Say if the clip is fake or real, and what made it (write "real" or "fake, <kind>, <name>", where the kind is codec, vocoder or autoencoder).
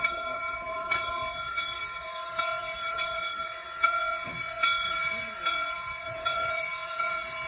fake, vocoder, WaveNeXt